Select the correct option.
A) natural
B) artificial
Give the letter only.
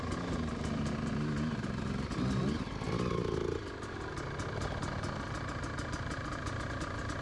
A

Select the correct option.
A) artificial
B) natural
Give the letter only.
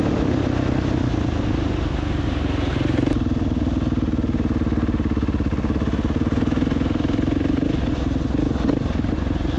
B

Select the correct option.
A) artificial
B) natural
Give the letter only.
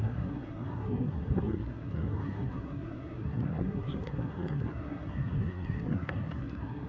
A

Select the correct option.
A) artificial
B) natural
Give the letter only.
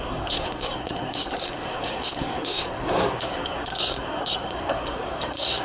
A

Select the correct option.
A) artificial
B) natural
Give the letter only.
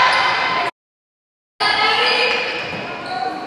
B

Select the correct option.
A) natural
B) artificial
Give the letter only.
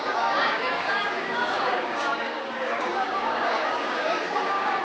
B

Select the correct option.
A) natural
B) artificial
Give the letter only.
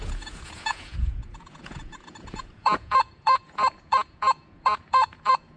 B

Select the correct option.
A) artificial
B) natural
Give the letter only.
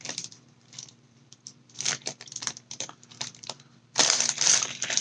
A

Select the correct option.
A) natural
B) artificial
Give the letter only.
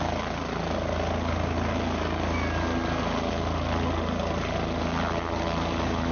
A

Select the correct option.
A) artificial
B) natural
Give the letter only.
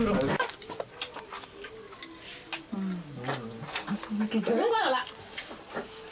B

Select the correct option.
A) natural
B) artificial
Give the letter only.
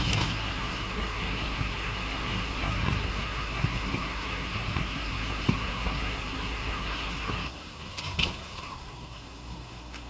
B